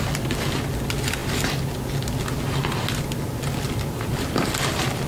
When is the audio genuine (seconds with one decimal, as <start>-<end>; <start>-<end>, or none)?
0.0-5.1